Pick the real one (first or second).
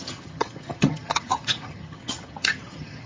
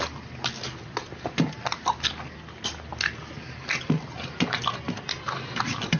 second